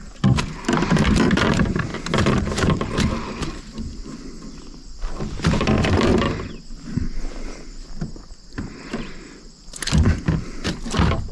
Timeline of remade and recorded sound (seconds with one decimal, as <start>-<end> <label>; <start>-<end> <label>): 0.0-1.9 remade; 1.9-2.4 recorded; 2.4-6.1 remade; 6.1-8.2 recorded; 8.2-11.3 remade